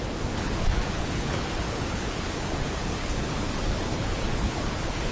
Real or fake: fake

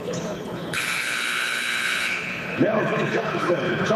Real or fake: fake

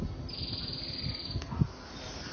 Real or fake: real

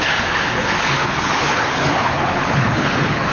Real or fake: fake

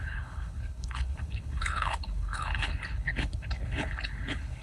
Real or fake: fake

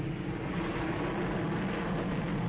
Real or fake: real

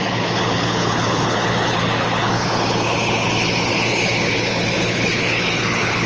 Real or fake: fake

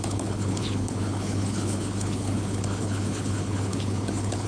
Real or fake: fake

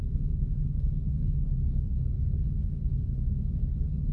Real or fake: fake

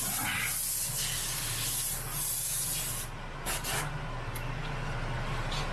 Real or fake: real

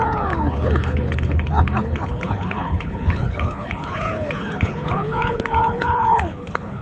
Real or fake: fake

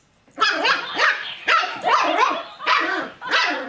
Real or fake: real